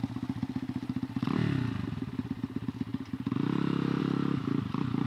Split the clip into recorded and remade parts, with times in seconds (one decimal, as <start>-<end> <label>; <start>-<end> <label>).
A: 0.0-5.1 recorded